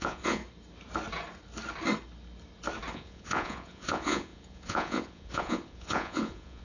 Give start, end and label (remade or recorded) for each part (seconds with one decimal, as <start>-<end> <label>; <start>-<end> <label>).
0.0-0.4 remade; 0.4-2.9 recorded; 2.9-6.6 remade